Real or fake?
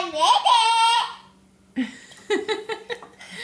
real